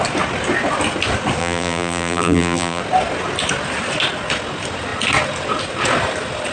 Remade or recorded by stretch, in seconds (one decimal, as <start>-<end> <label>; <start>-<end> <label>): 0.0-1.4 recorded; 1.4-2.8 remade; 2.8-6.5 recorded